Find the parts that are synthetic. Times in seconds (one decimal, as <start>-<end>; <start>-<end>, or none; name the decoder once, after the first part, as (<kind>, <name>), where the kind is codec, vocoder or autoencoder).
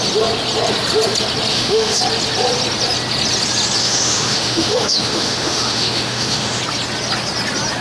1.5-2.0 (autoencoder, DAC-VAE); 3.8-6.6